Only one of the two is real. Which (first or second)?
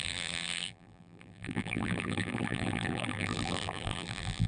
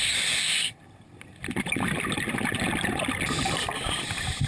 second